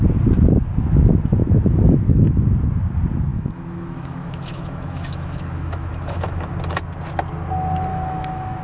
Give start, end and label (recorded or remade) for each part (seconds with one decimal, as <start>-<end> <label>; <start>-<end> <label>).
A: 0.0-3.3 recorded; 3.3-6.5 remade; 6.5-7.9 recorded; 7.9-8.6 remade